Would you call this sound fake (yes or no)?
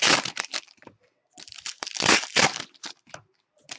yes